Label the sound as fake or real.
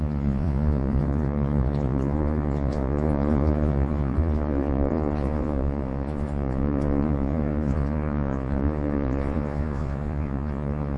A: fake